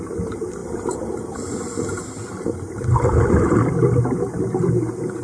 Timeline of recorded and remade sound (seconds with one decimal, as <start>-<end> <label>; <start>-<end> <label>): 0.0-5.2 recorded